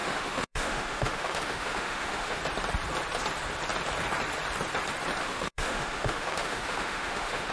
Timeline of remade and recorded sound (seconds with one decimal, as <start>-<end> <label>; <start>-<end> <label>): 0.0-2.4 remade; 2.4-5.2 recorded; 5.2-7.5 remade